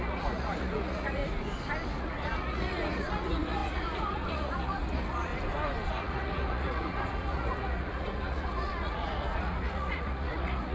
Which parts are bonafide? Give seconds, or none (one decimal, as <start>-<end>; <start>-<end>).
1.2-2.0; 5.3-5.9